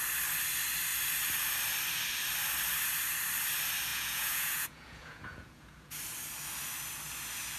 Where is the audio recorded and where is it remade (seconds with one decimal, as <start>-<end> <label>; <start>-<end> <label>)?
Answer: 0.0-3.9 recorded; 3.9-6.0 remade; 6.0-7.6 recorded